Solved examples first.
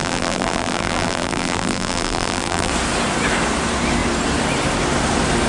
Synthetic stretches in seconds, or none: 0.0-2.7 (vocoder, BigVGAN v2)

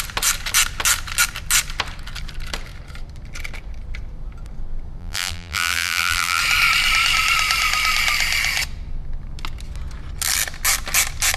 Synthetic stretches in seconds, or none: 5.0-6.4 (vocoder, BigVGAN v2)

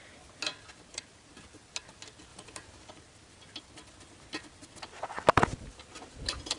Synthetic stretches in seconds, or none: 2.3-2.9 (vocoder, BigVGAN v2)

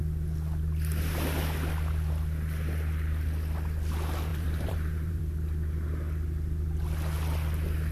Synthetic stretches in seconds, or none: 4.3-5.2 (vocoder, BigVGAN v2)